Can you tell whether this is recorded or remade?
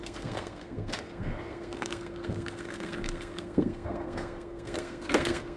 remade